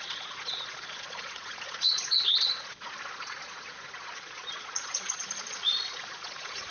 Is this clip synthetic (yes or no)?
yes